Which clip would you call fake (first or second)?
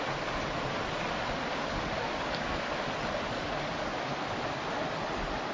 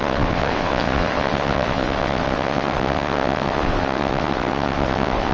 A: second